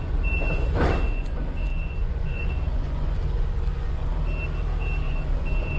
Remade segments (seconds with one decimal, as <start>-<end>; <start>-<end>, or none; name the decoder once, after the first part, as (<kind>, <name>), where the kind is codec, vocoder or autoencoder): 0.0-4.1 (vocoder, Vocos); 5.0-5.8